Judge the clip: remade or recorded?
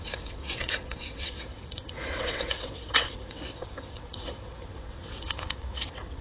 remade